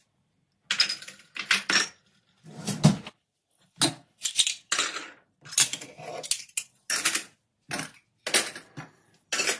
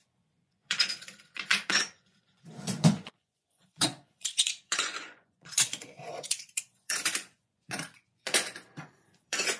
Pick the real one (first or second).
first